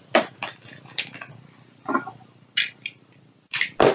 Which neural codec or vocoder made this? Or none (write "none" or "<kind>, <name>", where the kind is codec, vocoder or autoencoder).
none